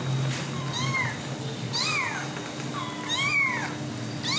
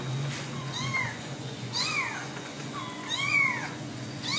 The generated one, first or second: second